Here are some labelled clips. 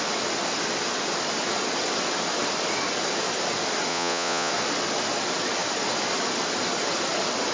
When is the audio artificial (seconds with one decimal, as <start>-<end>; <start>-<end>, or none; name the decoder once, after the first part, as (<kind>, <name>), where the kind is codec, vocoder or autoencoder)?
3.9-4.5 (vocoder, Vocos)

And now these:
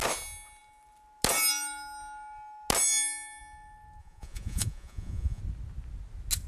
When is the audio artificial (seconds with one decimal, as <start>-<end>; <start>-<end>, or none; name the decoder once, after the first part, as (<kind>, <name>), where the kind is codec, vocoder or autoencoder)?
4.0-5.4 (vocoder, Vocos)

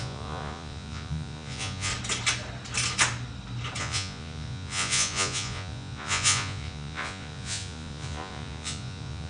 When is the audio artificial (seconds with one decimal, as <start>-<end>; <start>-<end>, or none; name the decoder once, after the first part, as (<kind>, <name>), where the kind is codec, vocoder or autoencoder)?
0.0-1.9 (vocoder, Vocos); 3.8-9.3